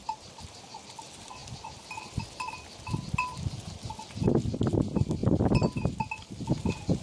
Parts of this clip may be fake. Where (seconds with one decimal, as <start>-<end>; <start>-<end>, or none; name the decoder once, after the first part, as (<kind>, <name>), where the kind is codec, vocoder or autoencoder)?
none